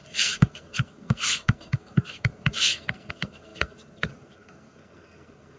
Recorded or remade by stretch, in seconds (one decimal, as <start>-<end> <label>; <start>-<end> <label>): 0.0-5.6 remade